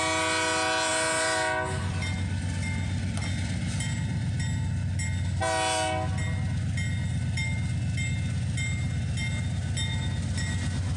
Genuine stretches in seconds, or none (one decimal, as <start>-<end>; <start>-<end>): 0.0-11.0